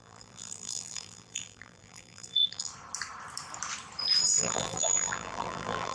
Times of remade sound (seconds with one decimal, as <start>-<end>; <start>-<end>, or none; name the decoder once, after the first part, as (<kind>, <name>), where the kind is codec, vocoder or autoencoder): 0.0-2.7 (vocoder, BigVGAN v2); 4.4-5.9